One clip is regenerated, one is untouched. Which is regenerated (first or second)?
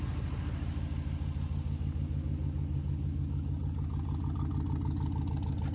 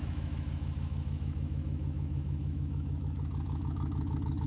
second